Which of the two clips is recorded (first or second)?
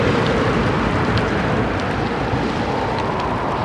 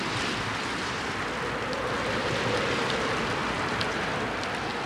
second